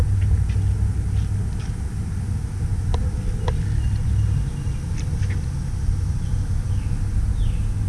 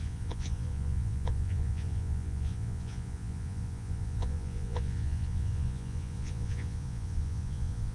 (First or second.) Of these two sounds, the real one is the first